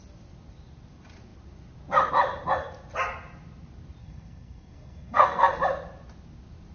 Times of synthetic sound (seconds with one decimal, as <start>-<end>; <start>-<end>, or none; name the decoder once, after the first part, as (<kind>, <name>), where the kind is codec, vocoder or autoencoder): 4.0-5.5 (codec, SNAC)